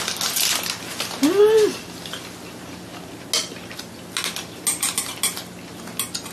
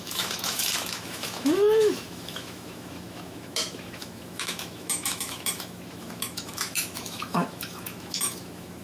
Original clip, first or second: first